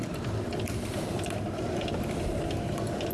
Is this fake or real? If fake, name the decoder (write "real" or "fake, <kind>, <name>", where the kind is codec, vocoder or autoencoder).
real